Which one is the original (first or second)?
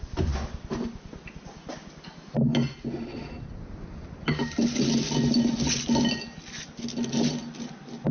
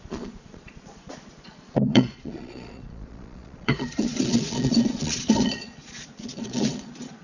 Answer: first